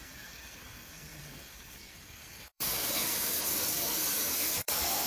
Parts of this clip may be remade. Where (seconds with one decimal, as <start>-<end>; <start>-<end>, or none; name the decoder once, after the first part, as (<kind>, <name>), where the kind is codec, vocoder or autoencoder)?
0.0-5.1 (codec, SNAC)